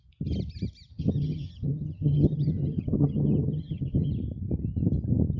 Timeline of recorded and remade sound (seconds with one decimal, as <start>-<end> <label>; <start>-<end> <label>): 0.0-0.9 recorded; 0.9-4.1 remade; 4.1-5.4 recorded